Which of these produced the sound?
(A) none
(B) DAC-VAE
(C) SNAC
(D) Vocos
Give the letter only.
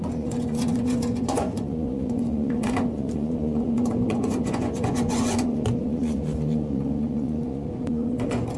D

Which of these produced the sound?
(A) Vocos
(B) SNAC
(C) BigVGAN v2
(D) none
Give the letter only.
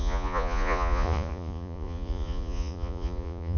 A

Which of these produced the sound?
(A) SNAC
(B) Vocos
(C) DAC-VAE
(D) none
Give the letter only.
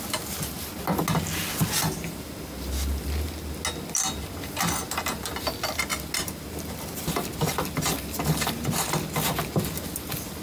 D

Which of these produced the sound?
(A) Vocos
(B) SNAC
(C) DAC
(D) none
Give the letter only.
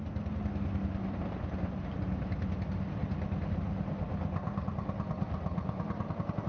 D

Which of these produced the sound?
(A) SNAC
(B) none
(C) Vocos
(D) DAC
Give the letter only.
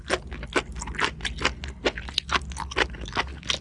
B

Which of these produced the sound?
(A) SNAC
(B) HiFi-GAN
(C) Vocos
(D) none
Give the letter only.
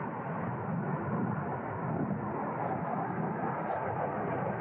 D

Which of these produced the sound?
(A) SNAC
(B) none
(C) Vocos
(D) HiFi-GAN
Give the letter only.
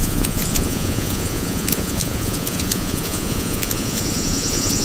C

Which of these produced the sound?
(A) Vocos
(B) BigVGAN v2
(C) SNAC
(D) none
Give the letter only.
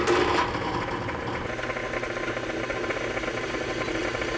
D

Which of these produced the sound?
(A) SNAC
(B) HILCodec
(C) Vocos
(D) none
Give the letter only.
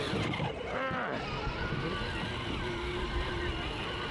D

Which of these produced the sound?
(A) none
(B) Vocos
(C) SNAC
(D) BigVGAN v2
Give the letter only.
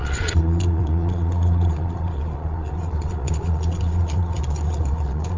B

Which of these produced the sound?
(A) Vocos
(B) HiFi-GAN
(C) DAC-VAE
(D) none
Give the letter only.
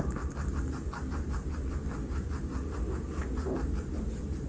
D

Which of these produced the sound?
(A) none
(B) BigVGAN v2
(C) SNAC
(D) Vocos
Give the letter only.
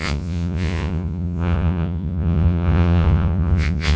D